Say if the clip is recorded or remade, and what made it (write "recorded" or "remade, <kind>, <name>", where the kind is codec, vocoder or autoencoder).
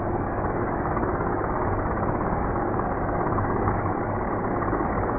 remade, codec, DAC